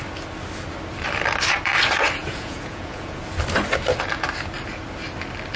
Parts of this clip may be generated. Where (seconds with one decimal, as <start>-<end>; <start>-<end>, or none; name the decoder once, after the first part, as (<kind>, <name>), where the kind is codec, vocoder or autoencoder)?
2.2-3.2 (vocoder, Vocos)